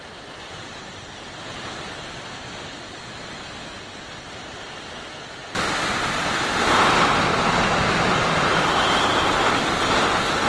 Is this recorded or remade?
recorded